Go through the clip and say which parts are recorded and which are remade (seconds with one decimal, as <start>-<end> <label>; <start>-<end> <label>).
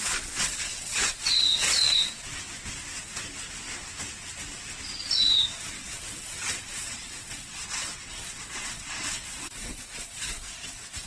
0.0-1.4 remade; 1.4-5.6 recorded; 5.6-11.1 remade